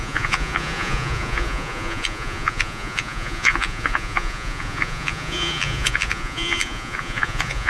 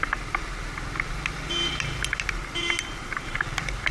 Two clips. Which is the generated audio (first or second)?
first